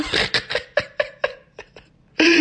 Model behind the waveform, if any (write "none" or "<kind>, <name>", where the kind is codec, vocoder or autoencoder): none